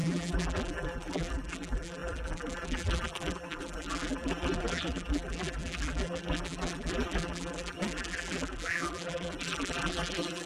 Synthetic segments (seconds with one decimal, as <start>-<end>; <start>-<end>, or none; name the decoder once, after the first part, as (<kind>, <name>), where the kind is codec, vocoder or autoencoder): 0.0-10.5 (vocoder, BigVGAN v2)